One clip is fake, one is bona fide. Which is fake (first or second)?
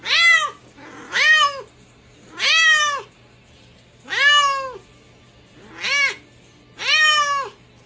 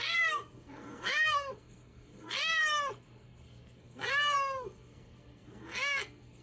second